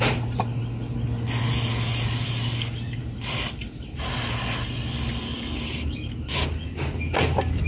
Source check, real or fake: real